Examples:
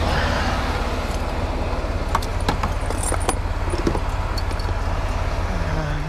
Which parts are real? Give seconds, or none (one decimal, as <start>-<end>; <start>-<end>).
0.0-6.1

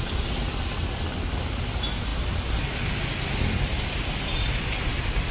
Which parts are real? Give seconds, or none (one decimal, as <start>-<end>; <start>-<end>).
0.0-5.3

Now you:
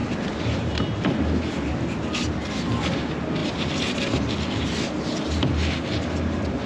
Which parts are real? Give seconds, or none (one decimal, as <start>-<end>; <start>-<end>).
1.1-6.7